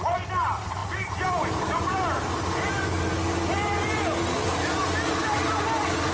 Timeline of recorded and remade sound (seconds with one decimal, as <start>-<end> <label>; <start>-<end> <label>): 0.0-6.1 recorded